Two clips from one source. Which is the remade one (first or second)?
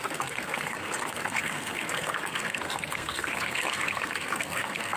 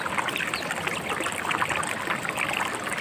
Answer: first